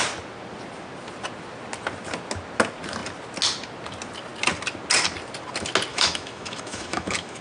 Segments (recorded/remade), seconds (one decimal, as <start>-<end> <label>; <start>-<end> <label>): 0.0-5.9 recorded; 5.9-7.4 remade